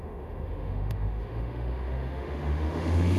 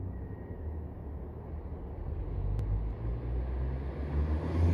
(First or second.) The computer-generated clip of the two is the first